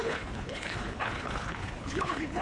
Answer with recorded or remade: remade